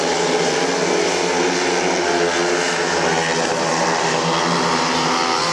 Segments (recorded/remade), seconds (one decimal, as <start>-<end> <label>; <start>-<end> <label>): 0.0-5.5 recorded